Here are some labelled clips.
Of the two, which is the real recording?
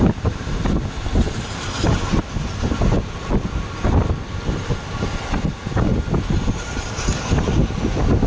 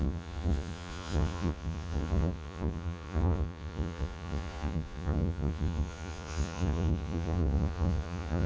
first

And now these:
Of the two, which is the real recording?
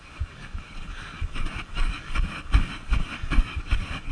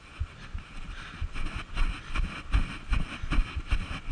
second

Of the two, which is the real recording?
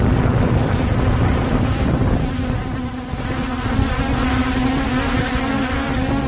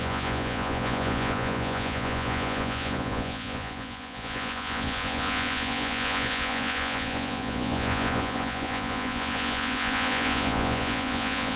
first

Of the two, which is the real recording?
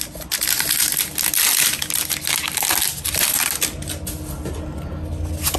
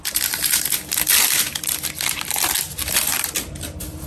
first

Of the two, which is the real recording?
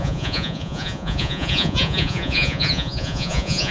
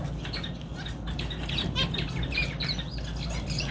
second